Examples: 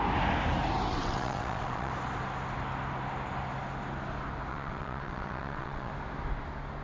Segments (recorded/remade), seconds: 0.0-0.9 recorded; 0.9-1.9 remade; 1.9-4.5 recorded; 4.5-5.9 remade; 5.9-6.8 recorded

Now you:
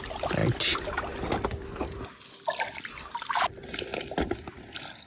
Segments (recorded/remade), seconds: 0.0-5.1 recorded

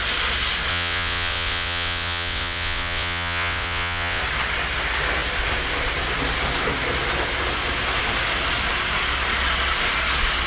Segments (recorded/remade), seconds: 0.0-0.7 recorded; 0.7-4.2 remade; 4.2-10.5 recorded